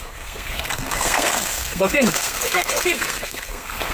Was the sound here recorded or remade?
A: remade